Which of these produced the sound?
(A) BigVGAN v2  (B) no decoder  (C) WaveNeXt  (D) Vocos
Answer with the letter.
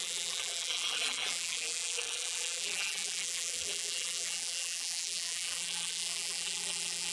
A